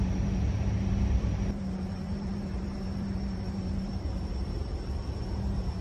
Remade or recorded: remade